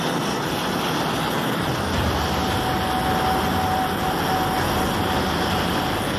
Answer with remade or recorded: recorded